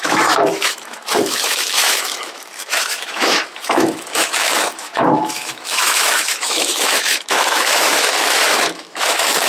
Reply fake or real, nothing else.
fake